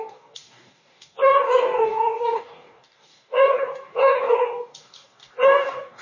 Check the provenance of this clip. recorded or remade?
remade